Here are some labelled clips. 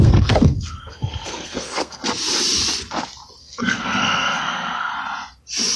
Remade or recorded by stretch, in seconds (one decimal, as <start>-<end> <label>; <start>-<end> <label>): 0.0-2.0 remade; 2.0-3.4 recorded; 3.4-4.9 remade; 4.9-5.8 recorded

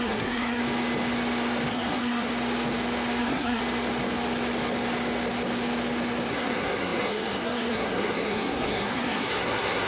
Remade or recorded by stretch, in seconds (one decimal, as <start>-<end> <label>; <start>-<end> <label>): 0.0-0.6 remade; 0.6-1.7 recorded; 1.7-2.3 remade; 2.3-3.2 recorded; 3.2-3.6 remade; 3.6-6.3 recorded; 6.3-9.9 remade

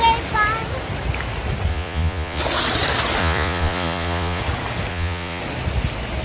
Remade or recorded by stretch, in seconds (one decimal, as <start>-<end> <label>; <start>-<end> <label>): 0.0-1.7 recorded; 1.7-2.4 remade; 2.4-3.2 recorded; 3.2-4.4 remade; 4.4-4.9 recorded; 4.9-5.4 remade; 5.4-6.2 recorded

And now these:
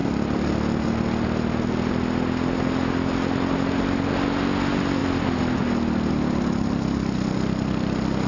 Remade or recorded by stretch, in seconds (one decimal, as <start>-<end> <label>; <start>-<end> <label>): 0.0-8.3 recorded

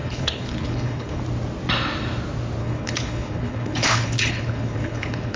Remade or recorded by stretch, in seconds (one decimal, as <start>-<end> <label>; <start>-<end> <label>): 0.0-1.2 remade; 1.2-2.6 recorded; 2.6-5.4 remade

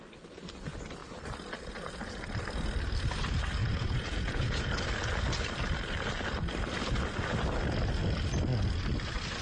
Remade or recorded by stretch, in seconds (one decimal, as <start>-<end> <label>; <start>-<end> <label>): 0.0-3.6 recorded; 3.6-4.7 remade; 4.7-9.4 recorded

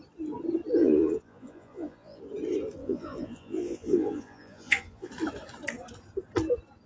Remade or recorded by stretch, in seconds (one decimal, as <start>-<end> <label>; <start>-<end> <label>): 0.0-0.8 recorded; 0.8-2.2 remade; 2.2-2.8 recorded; 2.8-5.1 remade; 5.1-6.9 recorded